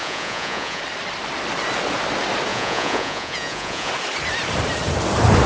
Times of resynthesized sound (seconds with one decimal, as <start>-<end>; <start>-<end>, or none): 0.0-0.8; 2.5-3.9